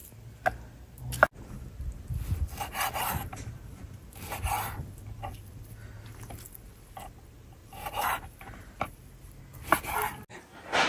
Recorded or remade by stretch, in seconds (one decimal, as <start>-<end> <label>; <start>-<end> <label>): 0.0-3.3 recorded; 3.3-4.8 remade; 4.8-7.6 recorded; 7.6-9.4 remade; 9.4-10.9 recorded